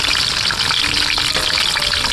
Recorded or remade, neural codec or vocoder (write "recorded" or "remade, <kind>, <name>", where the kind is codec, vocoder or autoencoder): recorded